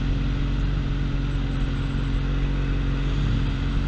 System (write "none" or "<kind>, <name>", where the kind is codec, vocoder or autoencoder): none